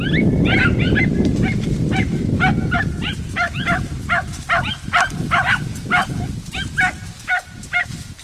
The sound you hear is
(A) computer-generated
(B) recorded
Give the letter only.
B